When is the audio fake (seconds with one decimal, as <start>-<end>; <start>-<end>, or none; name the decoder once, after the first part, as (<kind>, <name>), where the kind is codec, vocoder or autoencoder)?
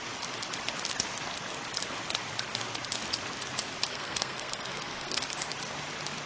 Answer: 3.9-5.2 (codec, SNAC)